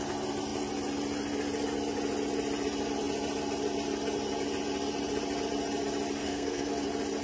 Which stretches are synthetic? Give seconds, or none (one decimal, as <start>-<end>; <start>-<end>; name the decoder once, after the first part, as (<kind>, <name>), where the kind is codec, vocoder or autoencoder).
6.2-6.7 (codec, SNAC)